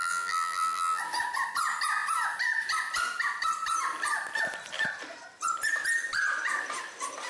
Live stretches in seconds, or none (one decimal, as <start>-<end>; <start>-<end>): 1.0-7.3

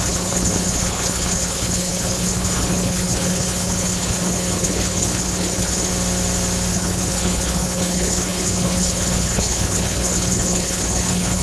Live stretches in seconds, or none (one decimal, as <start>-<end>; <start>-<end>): 5.9-6.7

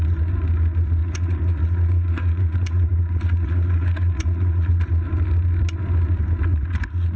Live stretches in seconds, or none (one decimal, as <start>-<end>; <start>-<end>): 0.0-1.0; 4.7-6.5

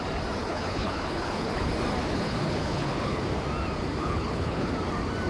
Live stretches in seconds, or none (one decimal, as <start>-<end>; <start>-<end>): 0.0-0.4; 1.7-2.1; 3.2-4.0; 4.7-5.3

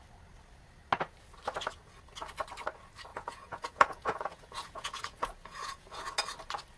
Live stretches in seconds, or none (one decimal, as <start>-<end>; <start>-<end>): 0.0-3.1; 6.0-6.8

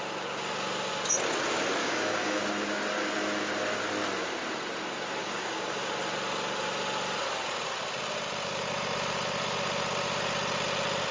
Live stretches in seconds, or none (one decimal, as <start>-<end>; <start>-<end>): 0.0-1.8; 2.4-5.2; 5.9-11.1